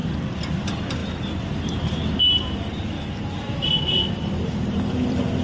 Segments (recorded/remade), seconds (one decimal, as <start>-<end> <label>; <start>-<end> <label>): 0.0-1.0 remade; 1.0-4.2 recorded; 4.2-5.4 remade